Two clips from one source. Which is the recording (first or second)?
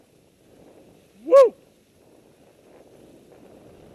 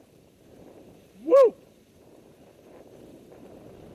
first